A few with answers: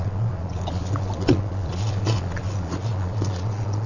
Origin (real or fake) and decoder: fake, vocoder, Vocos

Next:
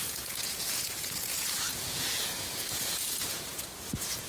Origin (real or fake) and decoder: fake, vocoder, Vocos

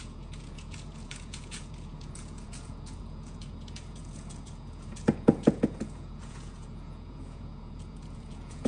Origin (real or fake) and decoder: fake, vocoder, Vocos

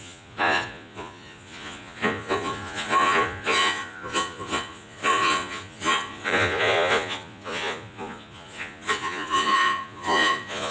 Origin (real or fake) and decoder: fake, vocoder, Vocos